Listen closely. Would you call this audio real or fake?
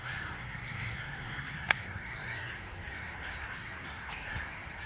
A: fake